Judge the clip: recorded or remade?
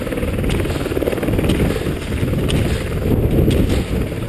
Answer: recorded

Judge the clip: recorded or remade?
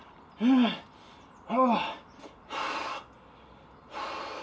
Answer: recorded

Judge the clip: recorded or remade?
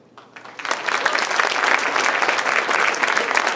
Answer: recorded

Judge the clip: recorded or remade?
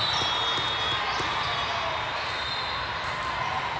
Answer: recorded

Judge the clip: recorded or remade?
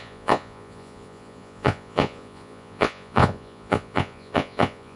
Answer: remade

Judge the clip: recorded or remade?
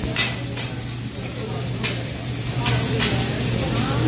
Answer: recorded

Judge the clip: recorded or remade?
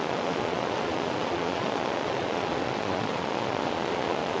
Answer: remade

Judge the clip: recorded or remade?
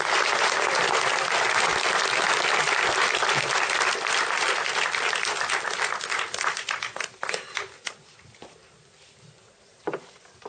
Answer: recorded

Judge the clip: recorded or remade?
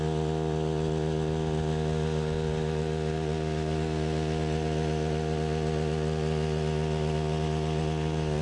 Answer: recorded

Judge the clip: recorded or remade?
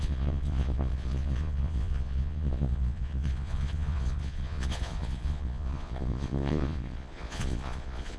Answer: remade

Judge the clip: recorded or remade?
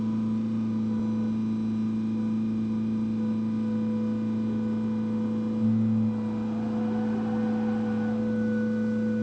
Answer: recorded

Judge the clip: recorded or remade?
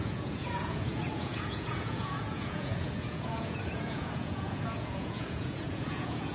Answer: remade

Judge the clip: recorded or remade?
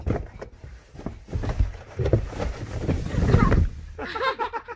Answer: recorded